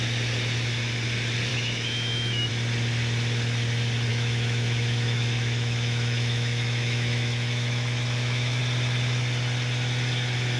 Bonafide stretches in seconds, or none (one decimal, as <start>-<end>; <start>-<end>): 0.0-1.5; 2.5-4.1; 8.6-10.6